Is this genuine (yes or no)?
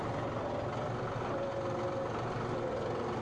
yes